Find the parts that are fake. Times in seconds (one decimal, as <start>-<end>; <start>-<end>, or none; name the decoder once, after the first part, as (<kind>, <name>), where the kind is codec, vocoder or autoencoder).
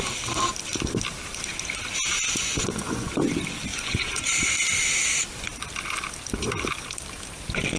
2.1-3.1 (vocoder, Vocos); 3.7-4.5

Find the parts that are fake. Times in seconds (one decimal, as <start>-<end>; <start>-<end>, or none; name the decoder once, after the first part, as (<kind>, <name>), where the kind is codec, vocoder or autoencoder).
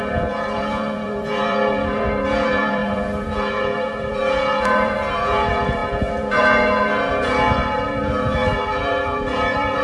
0.0-9.8 (vocoder, Vocos)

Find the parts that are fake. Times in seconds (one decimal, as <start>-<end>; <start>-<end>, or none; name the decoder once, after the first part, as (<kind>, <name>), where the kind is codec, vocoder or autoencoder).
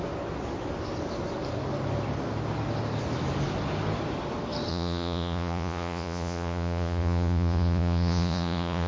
4.7-8.9 (vocoder, Vocos)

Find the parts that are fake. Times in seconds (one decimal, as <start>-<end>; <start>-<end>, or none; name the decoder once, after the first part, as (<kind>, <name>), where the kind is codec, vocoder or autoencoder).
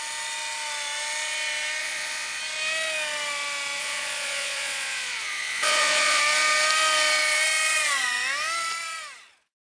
1.8-2.4 (vocoder, Vocos); 3.8-6.2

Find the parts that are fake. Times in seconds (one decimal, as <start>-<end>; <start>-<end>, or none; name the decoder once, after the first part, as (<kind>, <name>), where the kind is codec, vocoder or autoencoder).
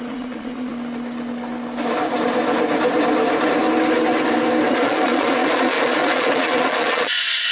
0.0-0.7 (vocoder, Vocos); 4.7-7.5